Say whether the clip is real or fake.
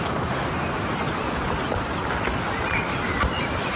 real